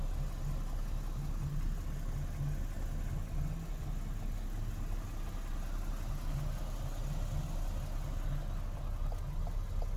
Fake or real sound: real